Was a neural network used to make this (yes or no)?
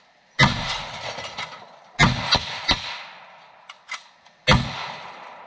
no